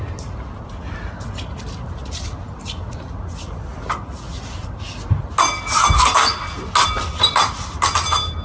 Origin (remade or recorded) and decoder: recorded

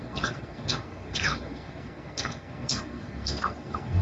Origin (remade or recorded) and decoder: remade, codec, SNAC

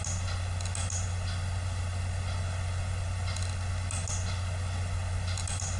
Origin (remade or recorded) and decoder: recorded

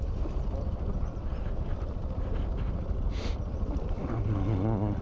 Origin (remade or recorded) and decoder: recorded